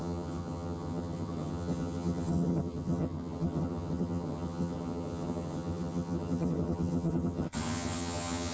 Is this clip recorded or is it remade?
remade